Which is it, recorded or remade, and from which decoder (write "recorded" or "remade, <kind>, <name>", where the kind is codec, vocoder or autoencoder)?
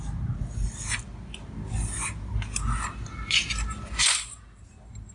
recorded